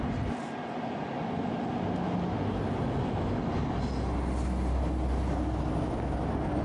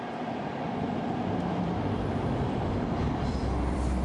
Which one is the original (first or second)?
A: first